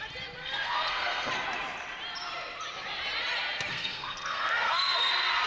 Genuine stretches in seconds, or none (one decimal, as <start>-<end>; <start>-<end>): 0.0-0.4; 1.3-3.7; 5.1-5.5